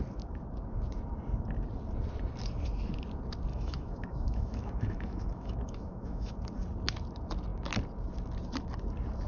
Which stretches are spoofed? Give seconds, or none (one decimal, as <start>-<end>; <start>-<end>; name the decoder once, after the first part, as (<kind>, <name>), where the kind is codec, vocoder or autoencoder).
3.5-6.3 (autoencoder, DAC-VAE)